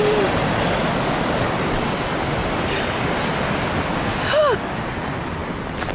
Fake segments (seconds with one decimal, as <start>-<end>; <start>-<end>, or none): none